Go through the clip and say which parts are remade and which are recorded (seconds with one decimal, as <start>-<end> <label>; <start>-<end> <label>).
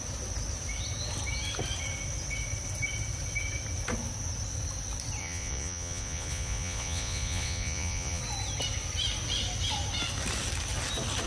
0.0-5.2 recorded; 5.2-8.2 remade; 8.2-11.3 recorded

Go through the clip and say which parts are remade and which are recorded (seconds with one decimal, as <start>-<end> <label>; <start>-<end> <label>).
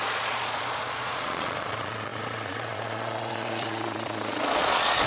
0.0-5.1 remade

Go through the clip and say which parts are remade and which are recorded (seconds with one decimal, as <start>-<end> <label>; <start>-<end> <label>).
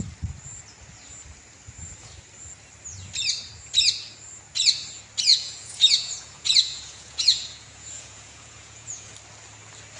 0.0-5.3 recorded; 5.3-9.1 remade; 9.1-10.0 recorded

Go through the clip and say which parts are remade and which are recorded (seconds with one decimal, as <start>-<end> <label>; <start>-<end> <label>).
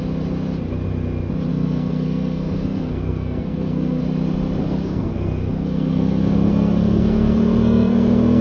0.0-1.5 recorded; 1.5-4.0 remade; 4.0-4.6 recorded; 4.6-8.4 remade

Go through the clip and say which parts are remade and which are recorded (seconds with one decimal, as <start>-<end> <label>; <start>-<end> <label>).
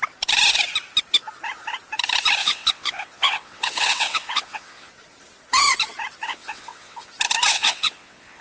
0.0-2.4 recorded; 2.4-4.9 remade; 4.9-6.3 recorded; 6.3-7.1 remade; 7.1-7.5 recorded; 7.5-8.4 remade